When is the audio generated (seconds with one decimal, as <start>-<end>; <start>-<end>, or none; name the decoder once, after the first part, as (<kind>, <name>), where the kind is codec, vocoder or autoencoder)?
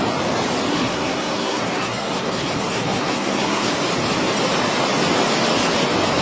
0.7-3.7 (codec, SNAC)